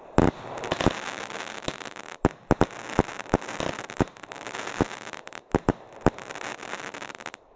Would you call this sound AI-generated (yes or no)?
no